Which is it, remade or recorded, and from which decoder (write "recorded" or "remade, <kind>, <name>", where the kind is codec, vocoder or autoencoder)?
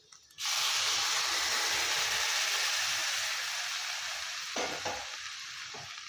recorded